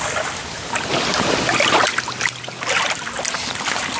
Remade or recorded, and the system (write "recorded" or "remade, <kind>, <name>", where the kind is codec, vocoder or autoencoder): recorded